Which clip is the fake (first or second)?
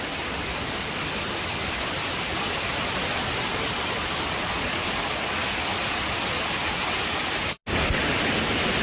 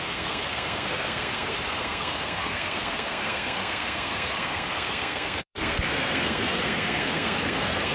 second